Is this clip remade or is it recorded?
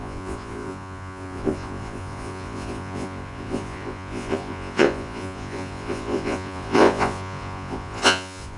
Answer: remade